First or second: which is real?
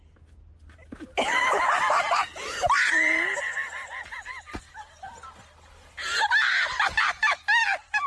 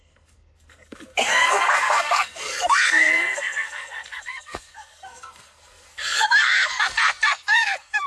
first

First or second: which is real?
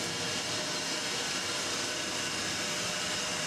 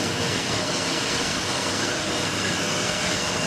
first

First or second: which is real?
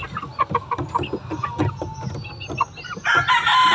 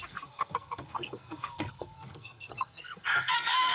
first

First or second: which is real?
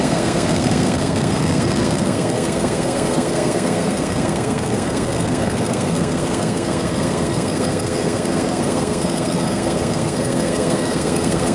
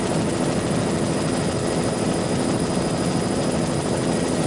second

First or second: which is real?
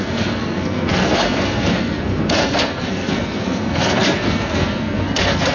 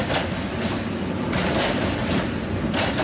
second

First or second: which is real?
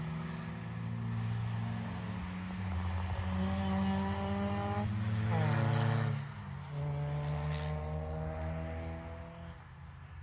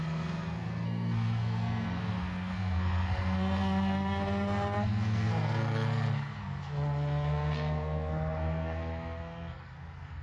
first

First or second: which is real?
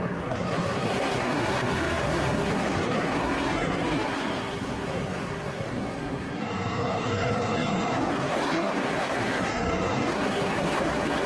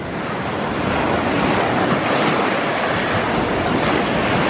second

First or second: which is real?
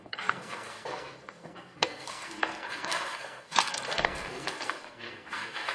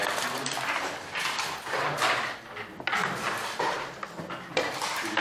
second